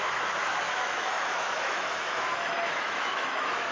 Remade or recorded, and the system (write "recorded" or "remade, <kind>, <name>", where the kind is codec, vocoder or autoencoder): remade, autoencoder, DAC-VAE